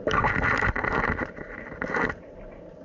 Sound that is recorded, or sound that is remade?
recorded